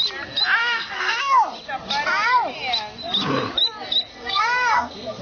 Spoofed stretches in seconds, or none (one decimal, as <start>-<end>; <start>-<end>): 0.6-1.2; 4.1-5.2